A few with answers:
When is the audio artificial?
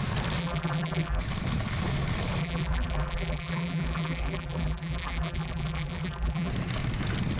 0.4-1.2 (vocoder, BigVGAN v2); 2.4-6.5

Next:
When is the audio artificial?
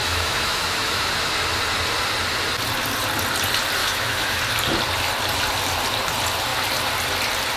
0.0-1.1 (autoencoder, DAC-VAE); 3.8-4.4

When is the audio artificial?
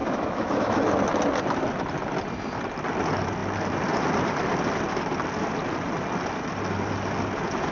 0.0-0.9 (autoencoder, DAC-VAE)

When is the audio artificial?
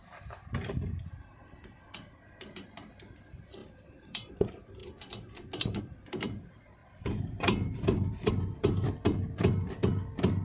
3.6-4.3 (vocoder, BigVGAN v2); 6.8-8.3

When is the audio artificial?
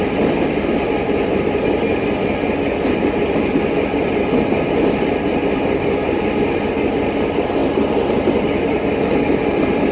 none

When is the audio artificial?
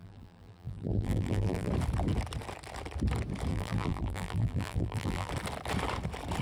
0.0-1.7 (vocoder, BigVGAN v2); 3.5-5.3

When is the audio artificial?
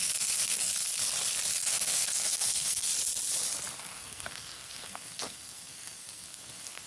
0.0-0.7 (codec, SNAC); 1.5-2.9; 3.8-6.9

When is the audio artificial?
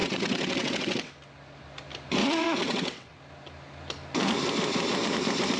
0.0-1.1 (vocoder, WaveNeXt); 2.2-3.2